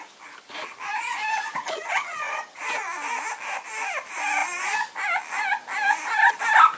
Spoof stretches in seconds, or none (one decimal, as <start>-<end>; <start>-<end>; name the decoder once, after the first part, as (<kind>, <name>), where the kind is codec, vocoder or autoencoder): 1.6-2.6 (vocoder, HiFi-GAN)